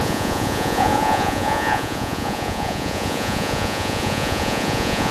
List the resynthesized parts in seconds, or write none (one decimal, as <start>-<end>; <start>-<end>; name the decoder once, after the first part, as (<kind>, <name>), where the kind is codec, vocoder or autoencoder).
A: 0.0-5.1 (vocoder, Vocos)